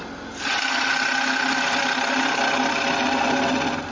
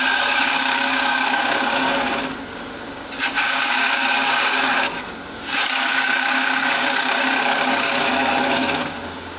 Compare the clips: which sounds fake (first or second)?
second